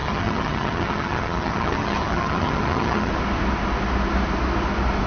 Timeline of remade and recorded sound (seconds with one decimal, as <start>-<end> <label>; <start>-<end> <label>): 0.0-3.1 remade; 3.1-5.1 recorded